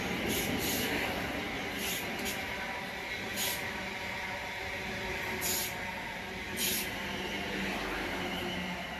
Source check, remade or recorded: recorded